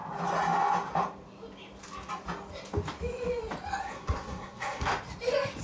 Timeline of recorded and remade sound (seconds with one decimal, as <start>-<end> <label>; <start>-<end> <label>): 0.0-3.8 recorded; 3.8-4.9 remade; 4.9-5.6 recorded

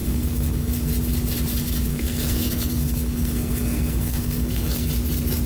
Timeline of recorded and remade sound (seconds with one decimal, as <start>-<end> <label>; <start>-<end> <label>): 0.0-0.9 remade; 0.9-1.9 recorded; 1.9-4.9 remade; 4.9-5.5 recorded

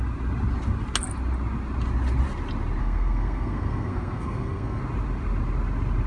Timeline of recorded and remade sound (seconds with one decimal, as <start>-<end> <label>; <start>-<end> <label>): 0.0-2.8 recorded; 2.8-4.8 remade; 4.8-6.1 recorded

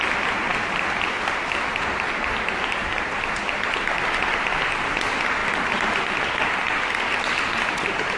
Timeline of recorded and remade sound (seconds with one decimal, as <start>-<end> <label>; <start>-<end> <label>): 0.0-8.2 recorded

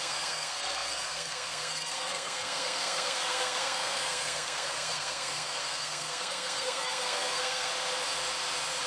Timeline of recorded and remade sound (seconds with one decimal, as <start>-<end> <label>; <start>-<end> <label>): 0.0-7.7 remade; 7.7-8.9 recorded

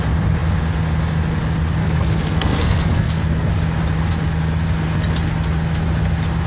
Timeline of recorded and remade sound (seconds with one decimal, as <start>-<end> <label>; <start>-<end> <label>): 0.0-1.8 recorded; 1.8-3.5 remade; 3.5-6.5 recorded

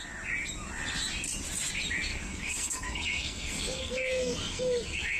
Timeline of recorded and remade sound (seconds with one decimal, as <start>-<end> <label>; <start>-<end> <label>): 0.0-2.1 recorded; 2.1-5.2 remade

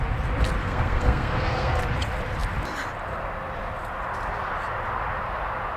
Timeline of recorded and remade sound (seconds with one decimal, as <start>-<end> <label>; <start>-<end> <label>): 0.0-0.6 recorded; 0.6-1.8 remade; 1.8-5.8 recorded